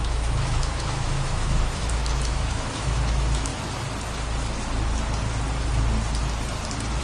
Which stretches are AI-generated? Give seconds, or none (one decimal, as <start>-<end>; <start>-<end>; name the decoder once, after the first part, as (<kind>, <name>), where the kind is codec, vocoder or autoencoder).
0.0-3.5 (autoencoder, DAC-VAE)